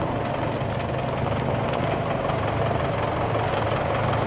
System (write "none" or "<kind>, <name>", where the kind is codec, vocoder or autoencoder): none